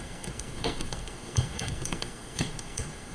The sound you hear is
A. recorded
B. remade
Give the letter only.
B